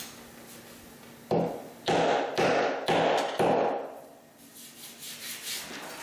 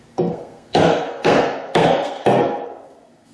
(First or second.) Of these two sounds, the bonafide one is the first